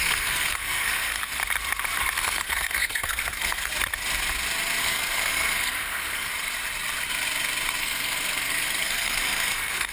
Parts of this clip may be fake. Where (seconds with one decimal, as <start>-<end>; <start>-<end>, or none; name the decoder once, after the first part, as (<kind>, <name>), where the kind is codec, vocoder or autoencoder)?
0.0-1.4 (codec, SNAC); 2.1-3.7; 4.8-6.3; 7.8-9.9